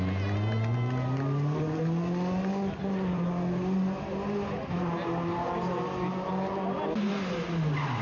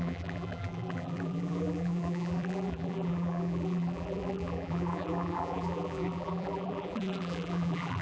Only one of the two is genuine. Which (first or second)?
first